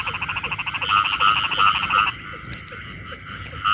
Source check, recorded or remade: recorded